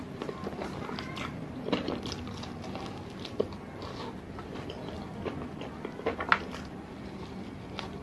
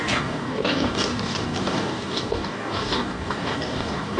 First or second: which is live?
first